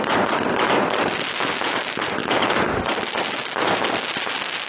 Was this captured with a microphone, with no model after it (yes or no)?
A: yes